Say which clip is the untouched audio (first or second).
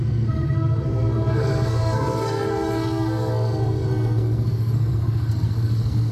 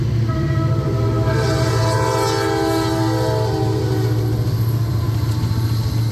second